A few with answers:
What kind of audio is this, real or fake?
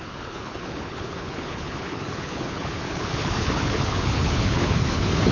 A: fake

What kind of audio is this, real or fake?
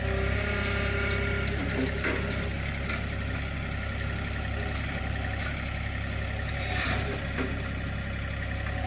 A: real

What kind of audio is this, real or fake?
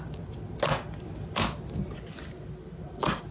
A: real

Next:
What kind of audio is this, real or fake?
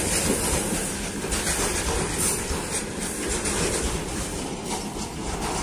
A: real